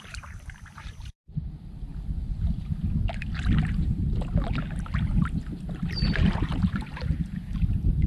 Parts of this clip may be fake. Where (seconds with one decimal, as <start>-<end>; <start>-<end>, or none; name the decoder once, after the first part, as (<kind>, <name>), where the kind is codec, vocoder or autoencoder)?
0.0-1.9 (vocoder, BigVGAN v2); 5.9-8.1